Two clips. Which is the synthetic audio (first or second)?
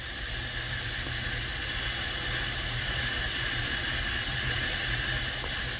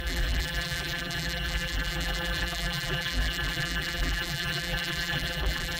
second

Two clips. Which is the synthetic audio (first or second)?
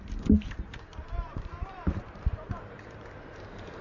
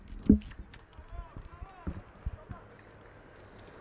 first